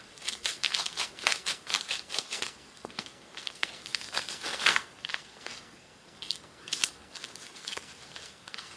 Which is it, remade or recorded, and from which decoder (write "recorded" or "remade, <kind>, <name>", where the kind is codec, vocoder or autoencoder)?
remade, codec, SNAC